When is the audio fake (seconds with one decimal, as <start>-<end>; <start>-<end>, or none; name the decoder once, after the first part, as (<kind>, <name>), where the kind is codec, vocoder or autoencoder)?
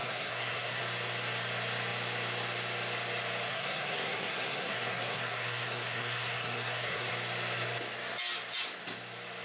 0.0-0.8 (codec, SNAC); 3.5-7.1